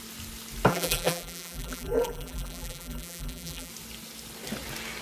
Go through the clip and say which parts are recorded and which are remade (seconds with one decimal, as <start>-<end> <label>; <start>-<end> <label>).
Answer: 0.0-0.7 recorded; 0.7-3.7 remade; 3.7-5.0 recorded